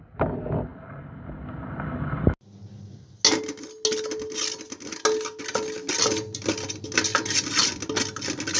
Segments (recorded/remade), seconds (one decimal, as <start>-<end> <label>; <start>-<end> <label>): 0.0-8.6 recorded